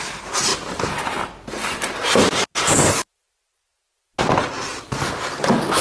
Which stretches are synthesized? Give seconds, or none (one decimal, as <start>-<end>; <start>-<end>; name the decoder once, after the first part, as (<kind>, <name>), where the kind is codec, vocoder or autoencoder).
none